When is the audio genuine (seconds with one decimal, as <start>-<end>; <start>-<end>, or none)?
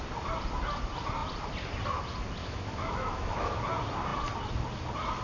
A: 0.0-2.4; 3.6-5.2